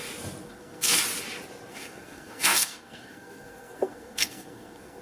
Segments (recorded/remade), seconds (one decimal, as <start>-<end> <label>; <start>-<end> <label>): 0.0-0.4 recorded; 0.4-1.0 remade; 1.0-1.7 recorded; 1.7-5.0 remade

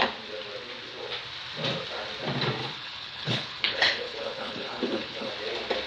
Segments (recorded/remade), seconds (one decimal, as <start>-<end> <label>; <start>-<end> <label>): 0.0-2.6 recorded; 2.6-5.3 remade; 5.3-5.9 recorded

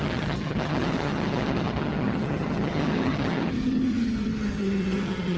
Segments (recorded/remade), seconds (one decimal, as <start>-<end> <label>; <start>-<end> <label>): 0.0-5.4 remade

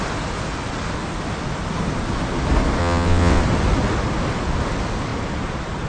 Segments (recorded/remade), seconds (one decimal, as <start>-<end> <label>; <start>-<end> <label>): 0.0-2.8 recorded; 2.8-3.4 remade; 3.4-5.9 recorded